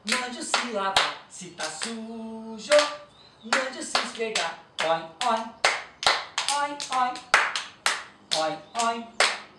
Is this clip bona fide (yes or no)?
yes